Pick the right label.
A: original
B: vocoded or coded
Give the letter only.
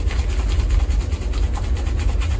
A